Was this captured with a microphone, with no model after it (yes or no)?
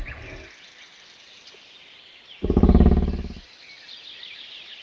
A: yes